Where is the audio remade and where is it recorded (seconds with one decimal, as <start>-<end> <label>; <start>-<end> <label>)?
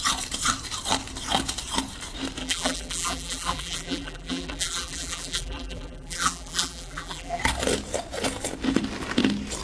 0.0-2.4 recorded; 2.4-7.4 remade; 7.4-9.6 recorded